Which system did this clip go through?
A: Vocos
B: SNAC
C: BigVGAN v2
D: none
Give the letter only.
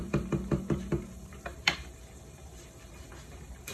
C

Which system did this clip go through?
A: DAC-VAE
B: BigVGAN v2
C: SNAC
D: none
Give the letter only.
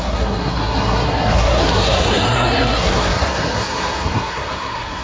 C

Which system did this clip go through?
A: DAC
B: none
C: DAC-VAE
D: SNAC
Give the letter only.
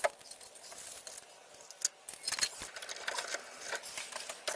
B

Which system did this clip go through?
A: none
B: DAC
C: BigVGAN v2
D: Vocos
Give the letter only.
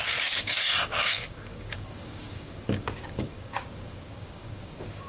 B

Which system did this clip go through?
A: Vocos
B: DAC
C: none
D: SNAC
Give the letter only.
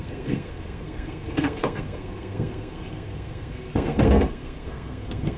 D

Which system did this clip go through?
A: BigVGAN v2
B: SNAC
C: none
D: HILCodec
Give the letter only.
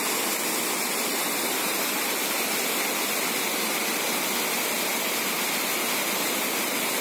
C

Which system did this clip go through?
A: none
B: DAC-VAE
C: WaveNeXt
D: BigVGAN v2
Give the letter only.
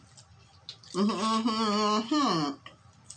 A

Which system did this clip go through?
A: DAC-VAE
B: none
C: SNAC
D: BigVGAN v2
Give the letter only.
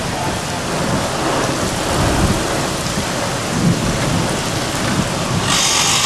B